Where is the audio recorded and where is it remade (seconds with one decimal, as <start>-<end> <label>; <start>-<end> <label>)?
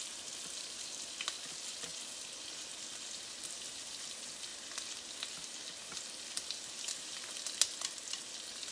0.0-8.7 recorded